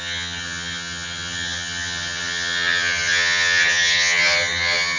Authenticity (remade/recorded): remade